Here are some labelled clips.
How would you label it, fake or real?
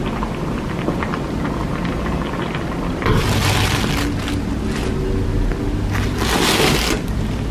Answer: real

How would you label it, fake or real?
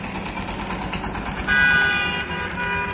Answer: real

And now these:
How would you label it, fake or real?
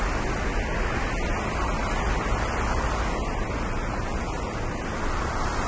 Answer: real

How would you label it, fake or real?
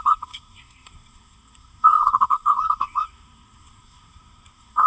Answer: fake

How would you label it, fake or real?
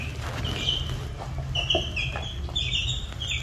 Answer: fake